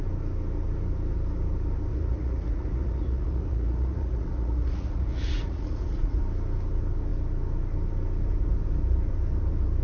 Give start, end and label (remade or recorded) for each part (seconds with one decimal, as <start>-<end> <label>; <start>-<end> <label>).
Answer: 0.0-1.9 recorded; 1.9-6.2 remade; 6.2-9.8 recorded